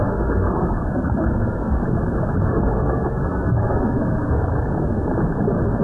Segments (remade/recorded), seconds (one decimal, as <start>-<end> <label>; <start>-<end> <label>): 0.0-1.8 remade; 1.8-2.5 recorded; 2.5-4.7 remade; 4.7-5.8 recorded